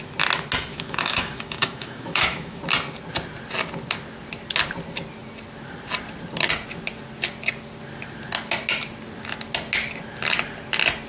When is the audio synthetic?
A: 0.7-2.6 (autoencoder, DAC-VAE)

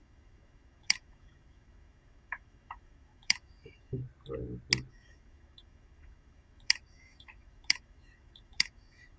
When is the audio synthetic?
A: 0.0-4.0 (autoencoder, DAC-VAE); 4.9-9.2